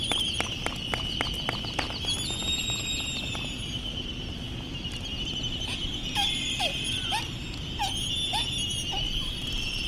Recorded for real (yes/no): yes